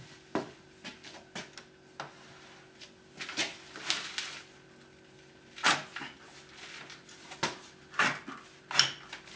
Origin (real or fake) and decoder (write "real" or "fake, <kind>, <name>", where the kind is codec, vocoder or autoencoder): real